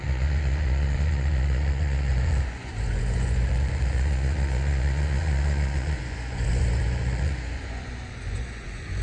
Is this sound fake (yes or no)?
yes